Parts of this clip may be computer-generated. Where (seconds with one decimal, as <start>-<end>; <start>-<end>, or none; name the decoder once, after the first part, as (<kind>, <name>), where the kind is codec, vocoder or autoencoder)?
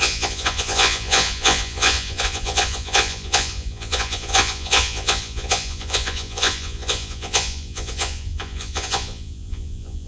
0.0-10.1 (vocoder, Vocos)